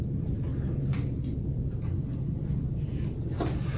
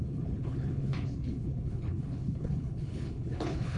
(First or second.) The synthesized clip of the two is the second